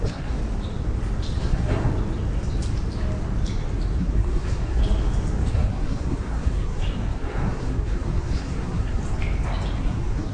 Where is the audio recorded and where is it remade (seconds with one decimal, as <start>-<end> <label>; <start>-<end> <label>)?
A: 0.0-0.4 remade; 0.4-1.4 recorded; 1.4-1.9 remade; 1.9-4.0 recorded; 4.0-4.8 remade; 4.8-5.5 recorded; 5.5-9.0 remade; 9.0-9.8 recorded; 9.8-10.3 remade

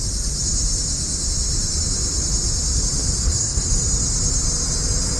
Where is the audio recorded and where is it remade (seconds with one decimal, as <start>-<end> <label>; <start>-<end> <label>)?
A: 0.0-3.2 recorded; 3.2-3.7 remade; 3.7-5.2 recorded

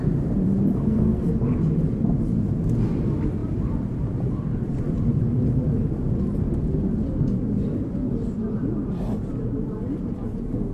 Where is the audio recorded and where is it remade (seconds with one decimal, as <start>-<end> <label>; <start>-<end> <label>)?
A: 0.0-0.7 recorded; 0.7-1.3 remade; 1.3-10.7 recorded

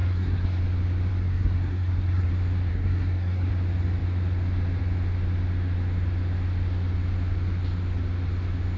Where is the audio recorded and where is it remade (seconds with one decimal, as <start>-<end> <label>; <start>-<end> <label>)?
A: 0.0-0.6 remade; 0.6-1.1 recorded; 1.1-2.3 remade; 2.3-2.7 recorded; 2.7-3.5 remade; 3.5-8.8 recorded

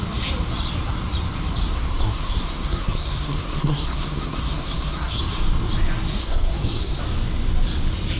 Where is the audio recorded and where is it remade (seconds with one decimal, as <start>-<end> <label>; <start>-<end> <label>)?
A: 0.0-1.6 recorded; 1.6-5.2 remade; 5.2-6.1 recorded; 6.1-7.0 remade; 7.0-8.2 recorded

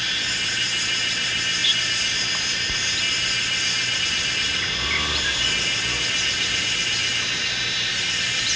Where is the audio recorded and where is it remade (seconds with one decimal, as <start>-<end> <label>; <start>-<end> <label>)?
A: 0.0-8.6 recorded

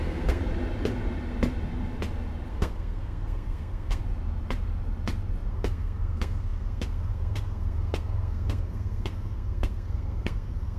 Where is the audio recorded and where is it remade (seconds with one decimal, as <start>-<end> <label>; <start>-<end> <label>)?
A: 0.0-0.4 remade; 0.4-2.5 recorded; 2.5-4.0 remade; 4.0-5.5 recorded; 5.5-10.8 remade